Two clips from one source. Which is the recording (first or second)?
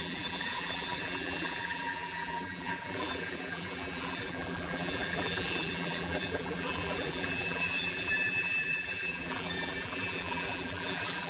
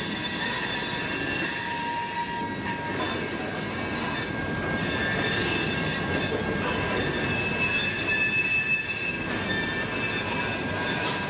second